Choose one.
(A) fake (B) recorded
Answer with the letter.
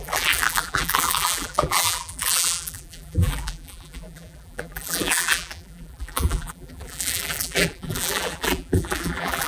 A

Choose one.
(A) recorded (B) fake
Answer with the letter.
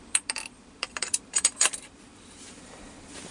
B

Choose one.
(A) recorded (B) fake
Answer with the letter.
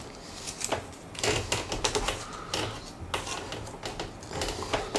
A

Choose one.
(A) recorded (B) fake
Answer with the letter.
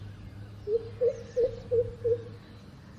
A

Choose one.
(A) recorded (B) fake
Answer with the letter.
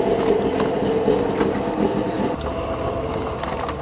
A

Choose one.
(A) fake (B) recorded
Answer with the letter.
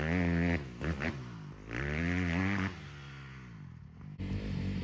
B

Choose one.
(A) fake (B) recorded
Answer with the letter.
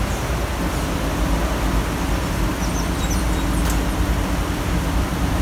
A